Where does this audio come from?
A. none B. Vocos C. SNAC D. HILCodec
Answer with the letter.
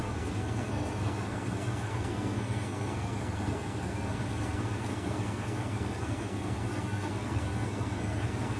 C